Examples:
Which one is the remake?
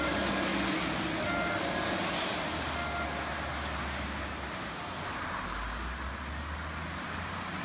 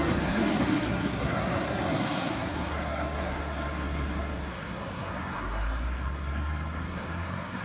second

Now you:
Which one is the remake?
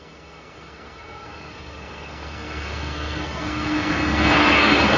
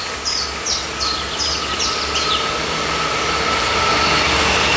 first